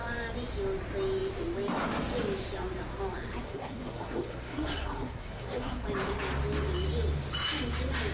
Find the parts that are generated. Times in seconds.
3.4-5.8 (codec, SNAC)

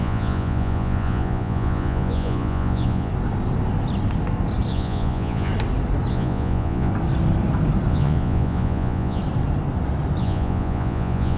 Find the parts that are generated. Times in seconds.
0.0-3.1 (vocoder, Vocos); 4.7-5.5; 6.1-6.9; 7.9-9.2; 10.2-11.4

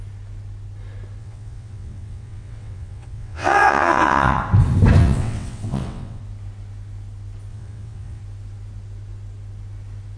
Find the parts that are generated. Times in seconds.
1.2-4.4 (vocoder, WaveNeXt); 5.0-6.2; 7.5-8.2